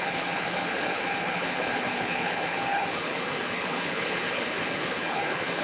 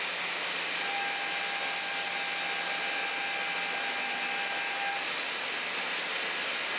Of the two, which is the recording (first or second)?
second